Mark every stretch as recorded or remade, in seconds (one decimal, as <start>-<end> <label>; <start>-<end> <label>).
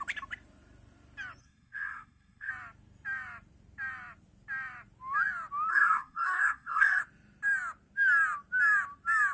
0.0-1.4 recorded; 1.4-2.5 remade; 2.5-5.7 recorded; 5.7-7.0 remade; 7.0-9.3 recorded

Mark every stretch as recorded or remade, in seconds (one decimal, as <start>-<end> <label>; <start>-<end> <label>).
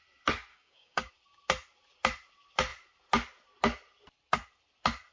0.0-0.5 recorded; 0.5-1.1 remade; 1.1-5.1 recorded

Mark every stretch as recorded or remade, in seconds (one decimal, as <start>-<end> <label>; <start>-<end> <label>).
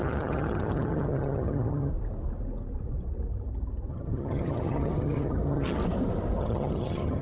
0.0-1.9 remade; 1.9-3.9 recorded; 3.9-5.8 remade; 5.8-6.4 recorded; 6.4-7.2 remade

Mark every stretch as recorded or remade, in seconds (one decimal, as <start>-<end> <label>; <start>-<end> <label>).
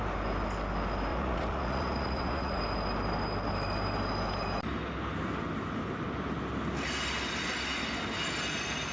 0.0-1.1 recorded; 1.1-2.6 remade; 2.6-8.9 recorded